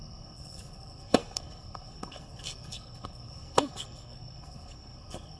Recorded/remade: remade